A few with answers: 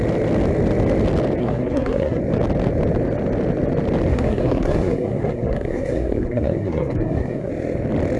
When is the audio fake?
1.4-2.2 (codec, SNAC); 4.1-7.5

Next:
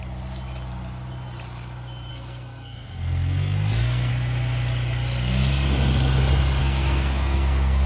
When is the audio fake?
2.1-4.1 (codec, SNAC); 6.6-7.9